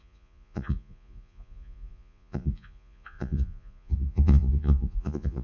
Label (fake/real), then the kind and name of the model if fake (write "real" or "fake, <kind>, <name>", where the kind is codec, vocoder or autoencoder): fake, vocoder, Vocos